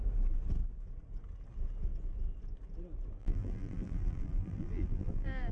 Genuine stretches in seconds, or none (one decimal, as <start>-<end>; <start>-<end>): 0.0-3.2